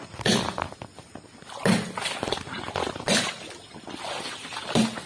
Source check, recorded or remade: recorded